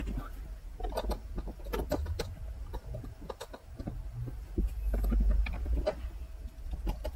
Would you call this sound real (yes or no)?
yes